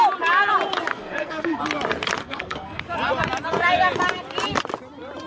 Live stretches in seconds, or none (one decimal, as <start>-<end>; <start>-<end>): 0.0-0.9; 1.6-2.2; 2.8-5.3